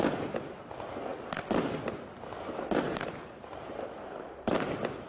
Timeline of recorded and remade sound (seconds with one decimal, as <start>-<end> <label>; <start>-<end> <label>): 0.0-5.1 recorded